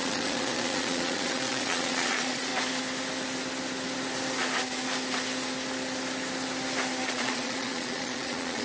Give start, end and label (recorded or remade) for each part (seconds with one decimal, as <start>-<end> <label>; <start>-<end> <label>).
0.0-2.5 remade; 2.5-7.1 recorded; 7.1-8.6 remade